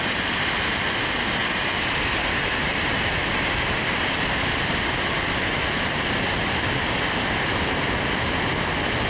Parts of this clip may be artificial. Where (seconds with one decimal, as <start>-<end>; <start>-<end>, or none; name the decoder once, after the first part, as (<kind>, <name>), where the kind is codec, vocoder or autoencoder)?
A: none

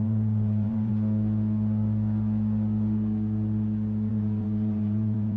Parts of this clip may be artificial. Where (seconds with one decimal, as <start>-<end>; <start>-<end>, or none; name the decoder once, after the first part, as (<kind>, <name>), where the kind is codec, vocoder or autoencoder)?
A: 0.0-0.9 (vocoder, BigVGAN v2); 4.1-5.4

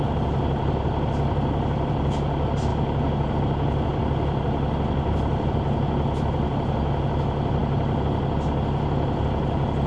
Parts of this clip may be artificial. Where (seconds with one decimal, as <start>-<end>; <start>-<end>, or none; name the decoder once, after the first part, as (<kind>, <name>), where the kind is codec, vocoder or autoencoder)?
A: none

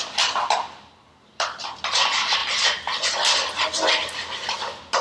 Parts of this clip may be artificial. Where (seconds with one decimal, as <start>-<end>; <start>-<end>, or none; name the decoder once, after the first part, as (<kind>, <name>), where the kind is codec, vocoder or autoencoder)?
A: none

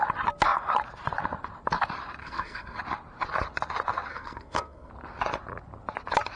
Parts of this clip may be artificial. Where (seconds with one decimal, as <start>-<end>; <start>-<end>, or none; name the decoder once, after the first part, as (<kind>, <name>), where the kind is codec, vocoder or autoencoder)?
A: 2.2-2.8 (codec, SNAC); 4.1-4.9